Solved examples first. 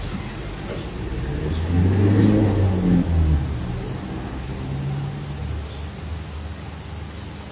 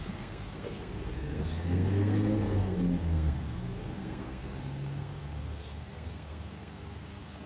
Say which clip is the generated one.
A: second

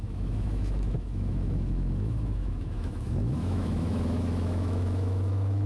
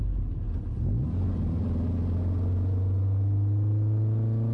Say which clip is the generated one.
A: first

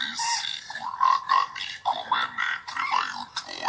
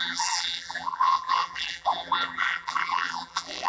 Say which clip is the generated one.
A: second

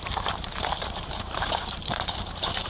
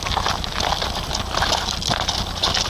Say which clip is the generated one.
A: first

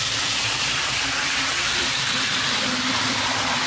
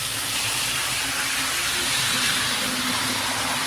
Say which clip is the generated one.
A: first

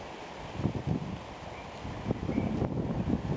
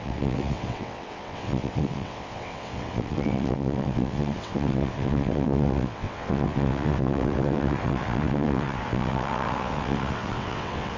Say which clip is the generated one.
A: second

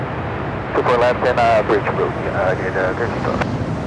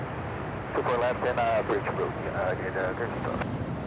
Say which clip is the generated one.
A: second